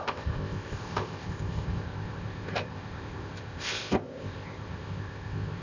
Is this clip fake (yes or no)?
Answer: yes